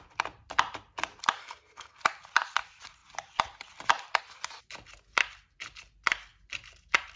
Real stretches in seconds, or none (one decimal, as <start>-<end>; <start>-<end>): 0.0-1.4; 2.0-7.2